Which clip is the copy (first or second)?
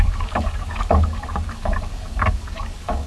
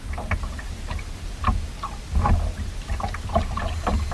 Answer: first